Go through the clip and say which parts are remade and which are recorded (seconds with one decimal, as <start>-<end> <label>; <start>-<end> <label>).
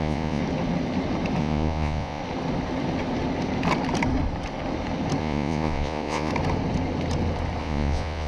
0.0-0.4 remade; 0.4-1.4 recorded; 1.4-2.2 remade; 2.2-5.2 recorded; 5.2-6.3 remade; 6.3-7.6 recorded; 7.6-8.3 remade